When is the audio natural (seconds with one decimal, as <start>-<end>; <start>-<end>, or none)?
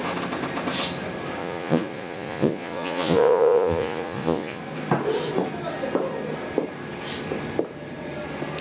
0.0-1.4; 4.6-8.6